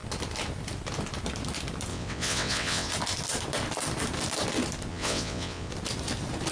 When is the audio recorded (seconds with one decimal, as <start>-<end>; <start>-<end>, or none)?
0.0-1.9; 2.9-4.9; 5.7-6.5

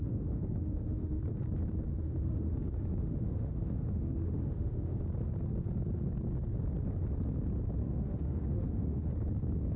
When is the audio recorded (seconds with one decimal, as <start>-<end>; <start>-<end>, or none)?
1.2-1.9; 5.0-7.8; 9.1-9.8

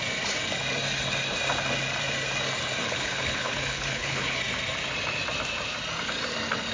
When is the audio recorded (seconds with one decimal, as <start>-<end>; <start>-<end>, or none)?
0.0-2.8; 4.4-6.7

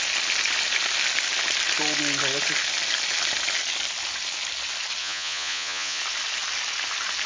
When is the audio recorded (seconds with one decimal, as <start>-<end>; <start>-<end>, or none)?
0.0-5.0; 6.0-7.3

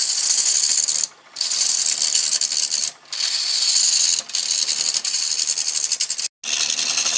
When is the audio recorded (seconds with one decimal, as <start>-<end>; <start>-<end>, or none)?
0.0-7.2

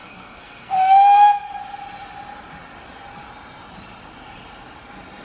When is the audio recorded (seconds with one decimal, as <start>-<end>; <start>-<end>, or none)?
1.5-5.2

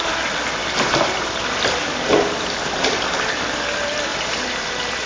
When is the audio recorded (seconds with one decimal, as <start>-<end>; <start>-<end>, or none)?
0.0-0.6; 3.3-4.1

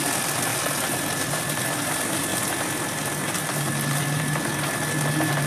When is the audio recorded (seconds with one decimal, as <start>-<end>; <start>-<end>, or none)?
0.0-5.5